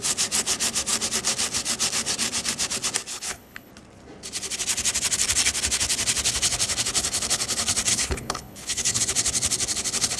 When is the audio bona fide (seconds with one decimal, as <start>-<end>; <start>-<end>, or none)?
0.0-3.1; 3.7-7.9; 9.0-10.2